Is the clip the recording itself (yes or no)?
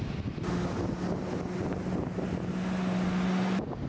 yes